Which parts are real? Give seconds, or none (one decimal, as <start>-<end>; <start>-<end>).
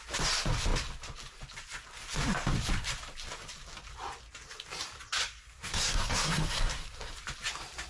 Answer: 0.0-5.2; 7.1-7.9